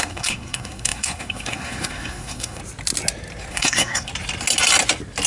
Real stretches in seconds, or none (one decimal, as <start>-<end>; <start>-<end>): 2.6-3.5; 4.1-5.3